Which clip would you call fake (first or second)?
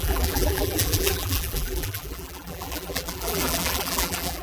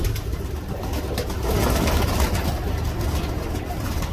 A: first